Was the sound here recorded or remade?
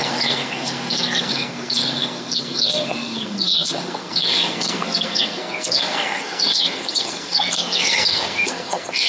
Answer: remade